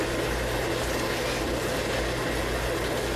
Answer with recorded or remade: recorded